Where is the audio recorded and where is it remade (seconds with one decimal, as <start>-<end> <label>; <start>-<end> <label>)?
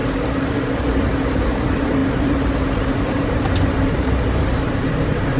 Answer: 0.0-0.8 recorded; 0.8-5.4 remade